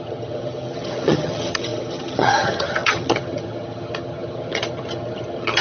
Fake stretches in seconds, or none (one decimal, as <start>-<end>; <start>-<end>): 0.0-5.6